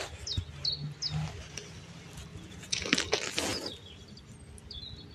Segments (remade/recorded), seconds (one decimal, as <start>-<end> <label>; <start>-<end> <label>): 0.0-2.3 recorded; 2.3-2.8 remade; 2.8-5.1 recorded

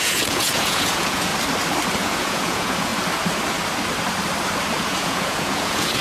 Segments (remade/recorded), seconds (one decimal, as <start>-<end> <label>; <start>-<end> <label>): 0.0-1.3 remade; 1.3-2.0 recorded; 2.0-2.9 remade; 2.9-4.8 recorded; 4.8-6.0 remade